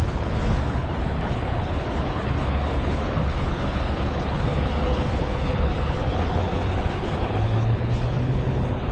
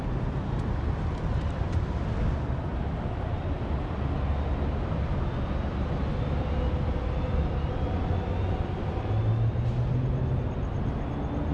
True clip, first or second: second